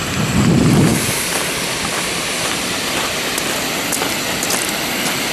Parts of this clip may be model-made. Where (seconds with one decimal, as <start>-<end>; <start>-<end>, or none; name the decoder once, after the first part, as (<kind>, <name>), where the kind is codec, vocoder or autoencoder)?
none